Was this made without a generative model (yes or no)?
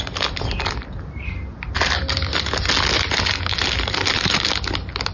yes